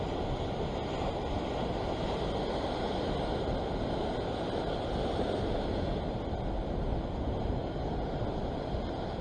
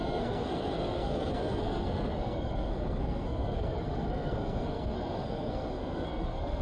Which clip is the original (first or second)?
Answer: first